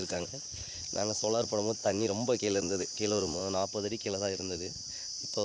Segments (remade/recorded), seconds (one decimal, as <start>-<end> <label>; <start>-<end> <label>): 0.0-3.4 remade; 3.4-4.0 recorded; 4.0-5.4 remade